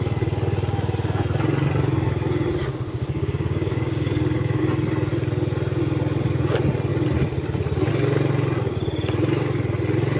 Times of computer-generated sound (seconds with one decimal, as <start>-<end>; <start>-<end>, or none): 2.6-4.6